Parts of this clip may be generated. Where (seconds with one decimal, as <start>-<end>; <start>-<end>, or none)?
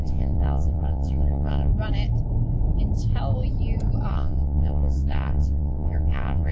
0.0-1.7; 4.1-6.5